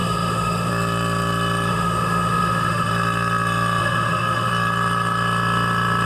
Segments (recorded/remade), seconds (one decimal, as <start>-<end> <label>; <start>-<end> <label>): 0.0-0.7 remade; 0.7-1.7 recorded; 1.7-2.9 remade; 2.9-3.8 recorded; 3.8-4.5 remade; 4.5-6.1 recorded

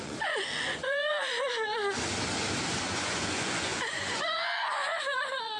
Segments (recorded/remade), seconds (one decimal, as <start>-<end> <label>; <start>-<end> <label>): 0.0-1.8 remade; 1.8-2.8 recorded; 2.8-5.6 remade

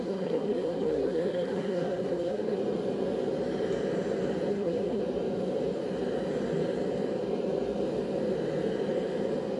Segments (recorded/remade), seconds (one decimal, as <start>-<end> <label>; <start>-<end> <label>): 0.0-2.6 remade; 2.6-4.5 recorded; 4.5-5.0 remade; 5.0-9.6 recorded

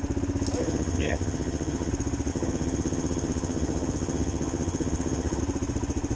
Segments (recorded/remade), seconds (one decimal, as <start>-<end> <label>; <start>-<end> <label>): 0.0-0.6 recorded; 0.6-1.9 remade; 1.9-2.3 recorded; 2.3-5.4 remade; 5.4-6.2 recorded

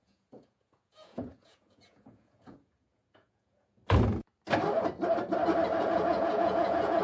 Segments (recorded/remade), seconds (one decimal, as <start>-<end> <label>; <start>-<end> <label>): 0.0-3.8 remade; 3.8-5.8 recorded; 5.8-7.0 remade